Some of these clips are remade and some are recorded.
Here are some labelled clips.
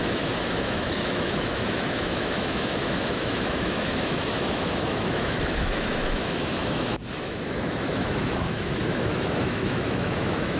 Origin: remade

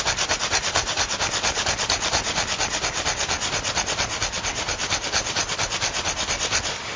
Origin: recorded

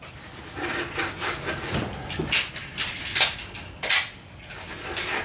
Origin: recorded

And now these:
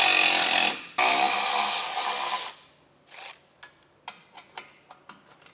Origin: recorded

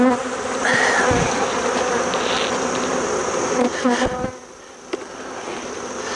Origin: recorded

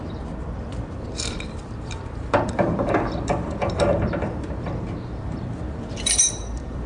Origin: remade